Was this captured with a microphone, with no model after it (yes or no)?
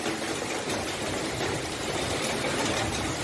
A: yes